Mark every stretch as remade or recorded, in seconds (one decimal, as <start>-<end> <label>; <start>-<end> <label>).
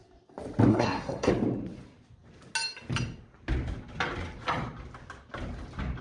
0.0-0.7 recorded; 0.7-1.3 remade; 1.3-6.0 recorded